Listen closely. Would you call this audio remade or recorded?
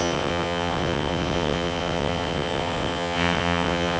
remade